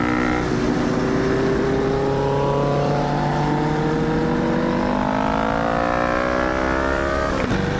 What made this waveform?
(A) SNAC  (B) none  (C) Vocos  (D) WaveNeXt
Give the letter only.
B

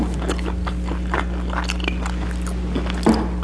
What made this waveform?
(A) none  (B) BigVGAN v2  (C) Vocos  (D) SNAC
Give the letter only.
A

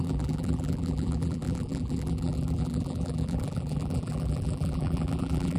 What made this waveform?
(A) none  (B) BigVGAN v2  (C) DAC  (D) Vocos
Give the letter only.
B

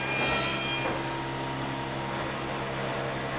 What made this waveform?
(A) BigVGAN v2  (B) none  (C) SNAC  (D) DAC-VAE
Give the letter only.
B